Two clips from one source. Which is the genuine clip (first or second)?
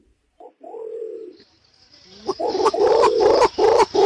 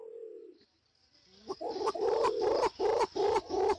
second